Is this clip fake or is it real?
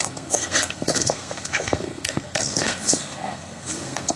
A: fake